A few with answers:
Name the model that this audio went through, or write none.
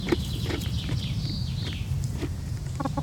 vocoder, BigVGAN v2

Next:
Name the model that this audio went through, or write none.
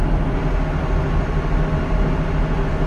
none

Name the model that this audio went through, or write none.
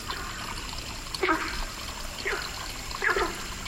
none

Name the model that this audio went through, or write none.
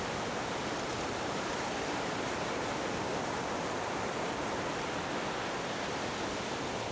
none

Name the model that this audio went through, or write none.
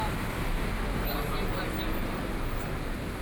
none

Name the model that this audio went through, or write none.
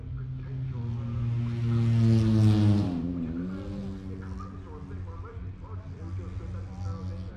none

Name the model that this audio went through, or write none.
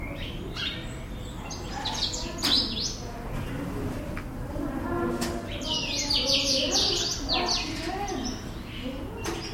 none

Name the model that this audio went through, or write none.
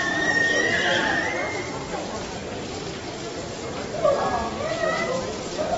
none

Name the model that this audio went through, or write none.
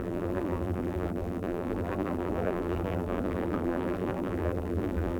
vocoder, BigVGAN v2